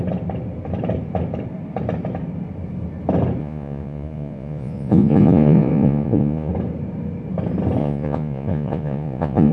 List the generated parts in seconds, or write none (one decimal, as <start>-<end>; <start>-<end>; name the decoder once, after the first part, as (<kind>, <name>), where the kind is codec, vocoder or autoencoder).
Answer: 3.4-6.5 (vocoder, Vocos); 7.8-9.5